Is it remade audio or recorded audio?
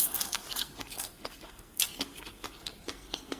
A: remade